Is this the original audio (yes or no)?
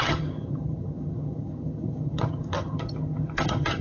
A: no